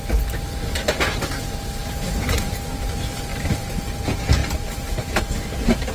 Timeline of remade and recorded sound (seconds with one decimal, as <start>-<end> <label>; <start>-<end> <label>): 0.0-1.8 recorded; 1.8-2.5 remade; 2.5-3.3 recorded; 3.3-3.8 remade; 3.8-4.4 recorded; 4.4-5.2 remade; 5.2-5.9 recorded